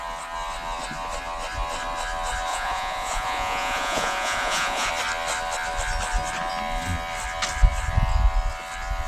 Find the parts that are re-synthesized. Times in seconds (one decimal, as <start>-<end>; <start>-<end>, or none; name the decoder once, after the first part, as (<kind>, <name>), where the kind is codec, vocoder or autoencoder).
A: 2.5-4.9 (vocoder, Vocos)